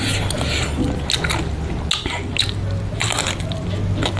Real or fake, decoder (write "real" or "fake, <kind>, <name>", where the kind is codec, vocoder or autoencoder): real